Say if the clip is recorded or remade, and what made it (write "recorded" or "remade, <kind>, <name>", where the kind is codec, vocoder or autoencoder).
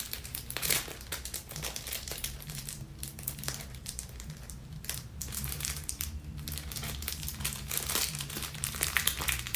remade, vocoder, BigVGAN v2